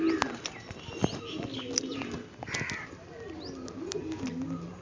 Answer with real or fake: real